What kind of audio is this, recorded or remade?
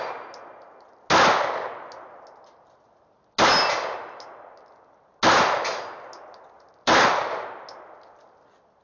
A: recorded